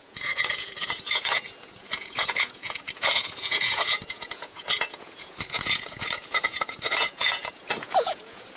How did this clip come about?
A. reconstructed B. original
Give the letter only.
A